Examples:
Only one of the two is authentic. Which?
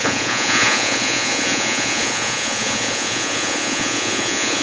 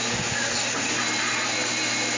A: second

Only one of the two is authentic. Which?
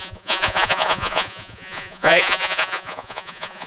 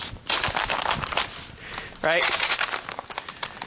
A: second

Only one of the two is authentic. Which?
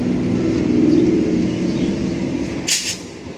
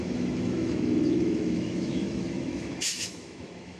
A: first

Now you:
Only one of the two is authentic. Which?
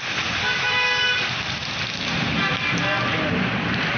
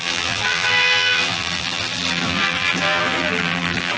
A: first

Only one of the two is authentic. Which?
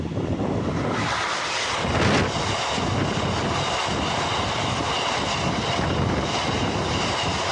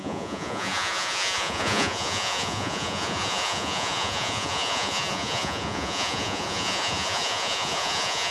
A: first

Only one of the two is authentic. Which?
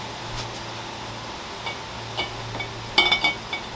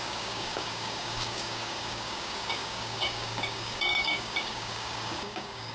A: first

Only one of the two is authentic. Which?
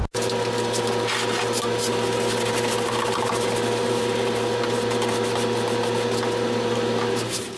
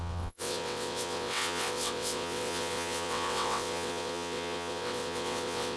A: first